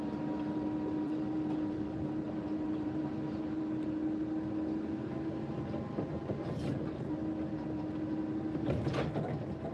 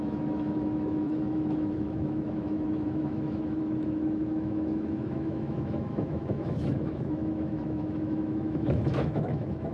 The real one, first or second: first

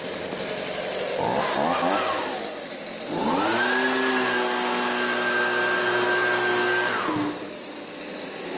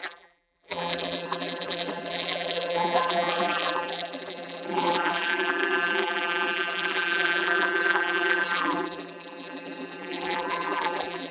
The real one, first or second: first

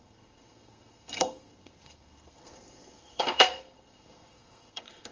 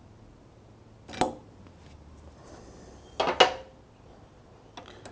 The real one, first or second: second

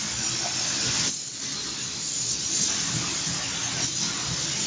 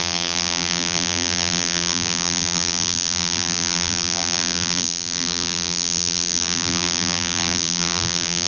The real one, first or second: first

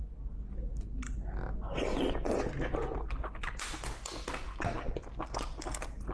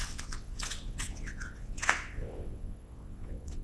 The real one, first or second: first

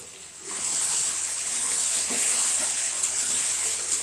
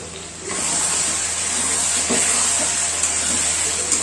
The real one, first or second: second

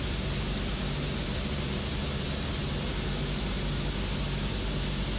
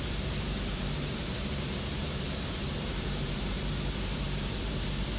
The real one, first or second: first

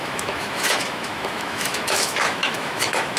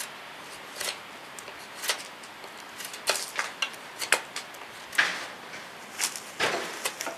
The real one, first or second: second